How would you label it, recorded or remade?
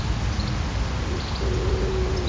recorded